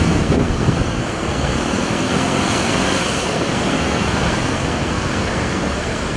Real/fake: fake